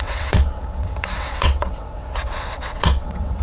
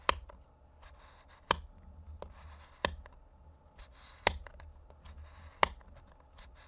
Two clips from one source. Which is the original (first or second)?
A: second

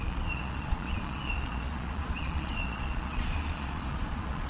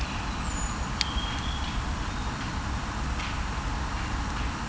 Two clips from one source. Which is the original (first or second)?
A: second